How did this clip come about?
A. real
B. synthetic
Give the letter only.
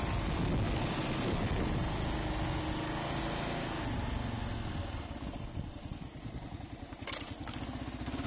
A